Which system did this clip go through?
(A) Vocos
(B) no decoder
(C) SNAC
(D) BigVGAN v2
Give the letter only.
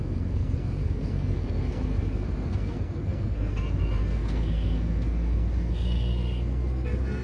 C